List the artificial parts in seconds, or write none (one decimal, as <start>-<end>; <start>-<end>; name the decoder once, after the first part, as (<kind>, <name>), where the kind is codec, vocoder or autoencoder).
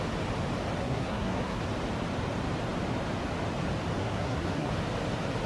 0.8-1.6 (codec, SNAC); 4.0-4.7